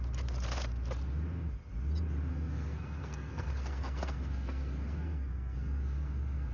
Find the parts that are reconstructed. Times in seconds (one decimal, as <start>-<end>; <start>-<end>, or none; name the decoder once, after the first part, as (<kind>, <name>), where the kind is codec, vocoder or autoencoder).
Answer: 2.3-6.5 (codec, SNAC)